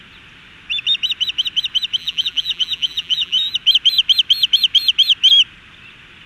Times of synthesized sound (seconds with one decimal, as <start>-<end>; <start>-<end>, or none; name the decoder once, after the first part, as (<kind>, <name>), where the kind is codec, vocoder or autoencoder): 2.0-3.5 (vocoder, BigVGAN v2)